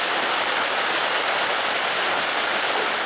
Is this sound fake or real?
real